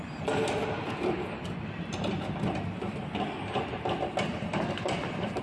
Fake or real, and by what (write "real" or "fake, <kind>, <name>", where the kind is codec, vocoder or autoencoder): real